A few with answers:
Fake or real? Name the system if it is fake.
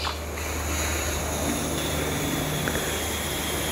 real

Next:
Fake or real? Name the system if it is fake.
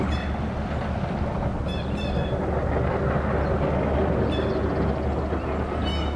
real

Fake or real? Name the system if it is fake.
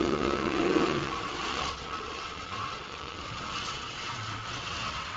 fake, vocoder, WaveNeXt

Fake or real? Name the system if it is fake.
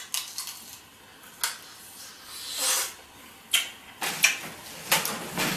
real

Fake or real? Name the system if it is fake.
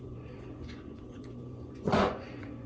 fake, vocoder, Vocos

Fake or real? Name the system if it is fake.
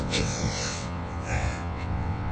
fake, vocoder, WaveNeXt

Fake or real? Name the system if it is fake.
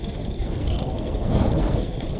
fake, codec, SNAC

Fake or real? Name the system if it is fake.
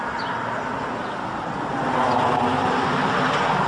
real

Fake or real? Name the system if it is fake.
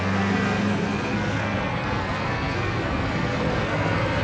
fake, codec, SNAC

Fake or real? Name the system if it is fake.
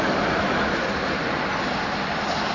real